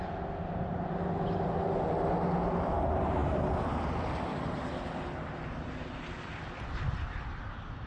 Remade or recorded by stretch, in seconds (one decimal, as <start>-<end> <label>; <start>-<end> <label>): 0.0-7.9 recorded